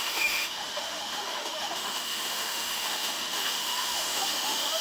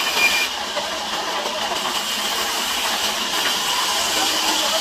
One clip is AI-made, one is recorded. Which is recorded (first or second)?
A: second